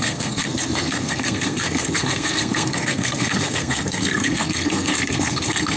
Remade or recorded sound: remade